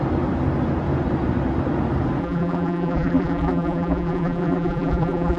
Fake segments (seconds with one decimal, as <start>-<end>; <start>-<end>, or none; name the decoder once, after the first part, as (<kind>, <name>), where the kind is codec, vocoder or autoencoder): 2.2-5.4 (vocoder, BigVGAN v2)